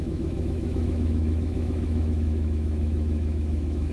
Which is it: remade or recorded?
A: remade